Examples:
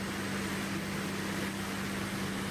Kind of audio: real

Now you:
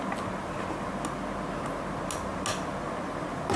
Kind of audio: real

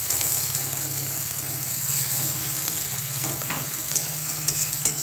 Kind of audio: fake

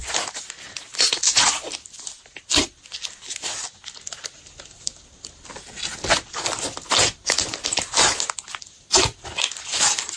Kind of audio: real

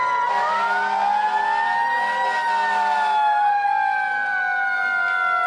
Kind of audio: real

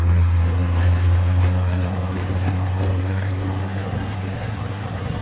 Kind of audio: fake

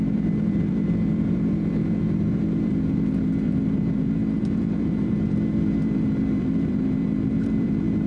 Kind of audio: fake